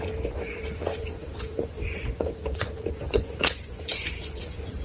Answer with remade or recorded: remade